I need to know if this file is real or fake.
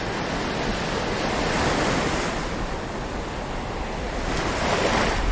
real